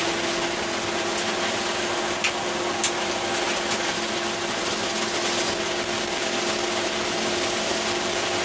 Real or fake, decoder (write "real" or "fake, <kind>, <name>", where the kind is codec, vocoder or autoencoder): real